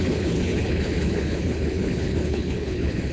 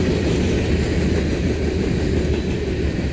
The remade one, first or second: first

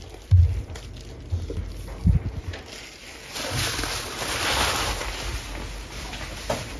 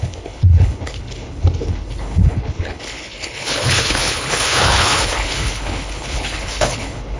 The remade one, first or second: second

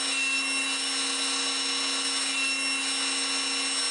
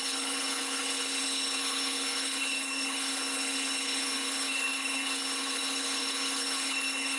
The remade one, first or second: second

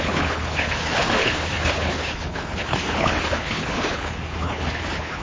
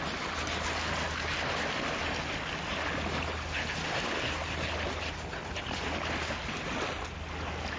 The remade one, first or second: first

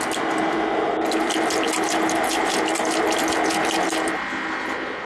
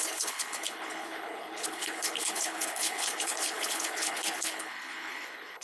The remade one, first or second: second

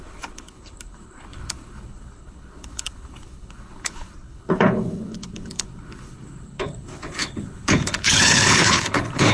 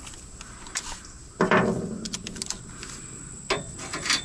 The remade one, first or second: first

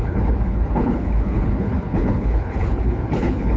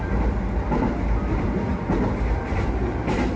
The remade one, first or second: first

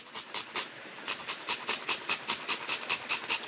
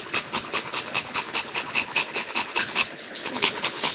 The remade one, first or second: second